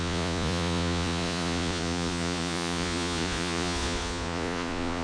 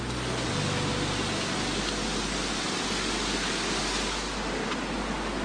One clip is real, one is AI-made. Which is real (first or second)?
second